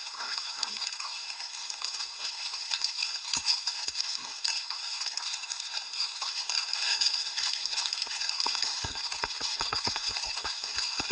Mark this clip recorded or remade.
remade